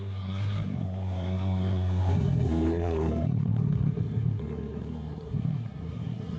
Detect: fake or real fake